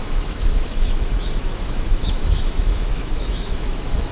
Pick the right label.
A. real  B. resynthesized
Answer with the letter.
B